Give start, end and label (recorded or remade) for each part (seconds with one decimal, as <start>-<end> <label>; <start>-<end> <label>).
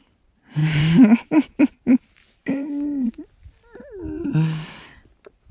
0.0-0.6 recorded; 0.6-1.6 remade; 1.6-2.4 recorded; 2.4-3.2 remade; 3.2-5.5 recorded